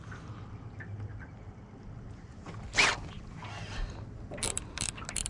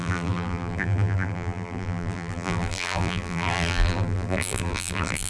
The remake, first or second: second